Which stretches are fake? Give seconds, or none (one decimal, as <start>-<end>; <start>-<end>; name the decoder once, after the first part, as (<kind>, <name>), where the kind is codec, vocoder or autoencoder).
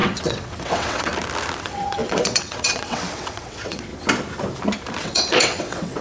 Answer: 0.0-1.1 (vocoder, WaveNeXt); 1.6-3.9; 5.0-6.0